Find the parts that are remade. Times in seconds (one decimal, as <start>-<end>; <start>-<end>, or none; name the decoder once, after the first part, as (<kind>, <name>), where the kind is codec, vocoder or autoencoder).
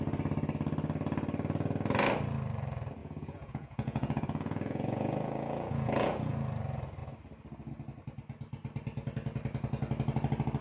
3.0-6.3 (vocoder, Vocos)